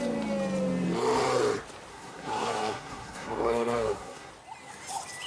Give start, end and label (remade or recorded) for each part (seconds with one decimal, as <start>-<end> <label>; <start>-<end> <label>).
0.0-1.9 recorded; 1.9-4.3 remade; 4.3-5.3 recorded